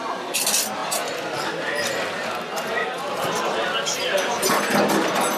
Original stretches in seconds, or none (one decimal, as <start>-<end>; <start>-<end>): 0.0-5.4